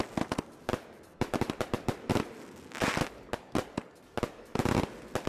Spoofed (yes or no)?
no